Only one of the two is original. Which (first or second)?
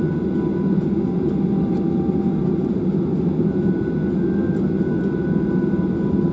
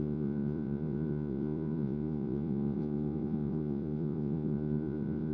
first